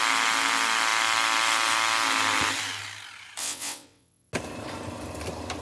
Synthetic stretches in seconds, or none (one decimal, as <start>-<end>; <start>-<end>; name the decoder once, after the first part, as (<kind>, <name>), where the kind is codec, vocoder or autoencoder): 3.4-4.3 (vocoder, WaveNeXt)